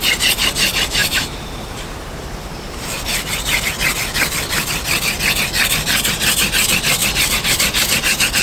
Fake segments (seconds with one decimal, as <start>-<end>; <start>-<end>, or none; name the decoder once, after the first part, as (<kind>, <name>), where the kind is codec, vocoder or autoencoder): 1.0-3.6 (vocoder, BigVGAN v2); 7.0-8.0